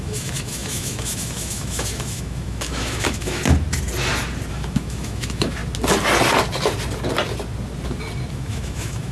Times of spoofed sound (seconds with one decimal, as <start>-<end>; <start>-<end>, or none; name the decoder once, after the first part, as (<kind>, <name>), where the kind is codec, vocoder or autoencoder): 0.0-3.4 (autoencoder, DAC-VAE); 4.5-5.6; 8.3-9.1

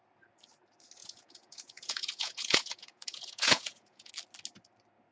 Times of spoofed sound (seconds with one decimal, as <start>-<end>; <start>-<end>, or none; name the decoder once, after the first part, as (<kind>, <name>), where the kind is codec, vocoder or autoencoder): 1.0-4.1 (vocoder, Vocos)